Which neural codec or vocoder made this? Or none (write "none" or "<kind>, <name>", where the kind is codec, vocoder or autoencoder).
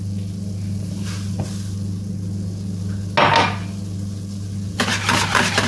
none